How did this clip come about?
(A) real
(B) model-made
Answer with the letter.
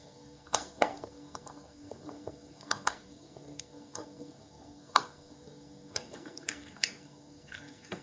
B